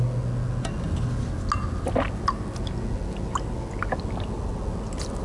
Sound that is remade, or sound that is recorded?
recorded